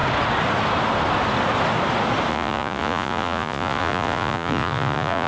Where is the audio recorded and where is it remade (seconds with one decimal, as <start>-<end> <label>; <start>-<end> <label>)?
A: 0.0-2.3 recorded; 2.3-5.3 remade